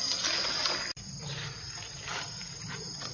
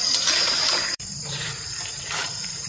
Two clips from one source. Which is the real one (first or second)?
first